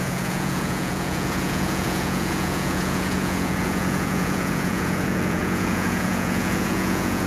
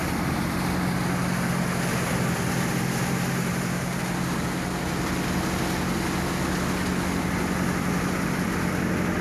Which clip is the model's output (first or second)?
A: first